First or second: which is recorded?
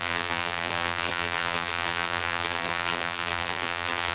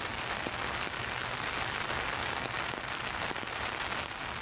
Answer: second